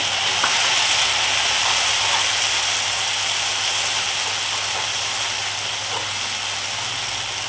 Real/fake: real